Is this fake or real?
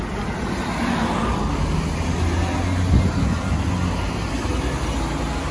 real